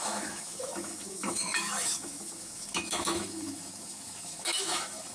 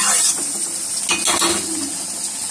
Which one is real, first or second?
second